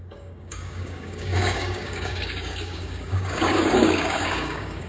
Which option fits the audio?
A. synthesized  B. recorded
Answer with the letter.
A